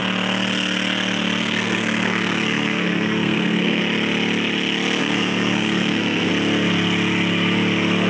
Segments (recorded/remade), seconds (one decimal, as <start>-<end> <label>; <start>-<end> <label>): 0.0-1.4 recorded; 1.4-3.8 remade; 3.8-5.0 recorded; 5.0-6.3 remade; 6.3-8.1 recorded